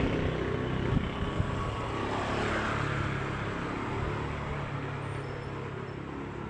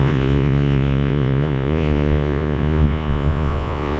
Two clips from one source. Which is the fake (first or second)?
second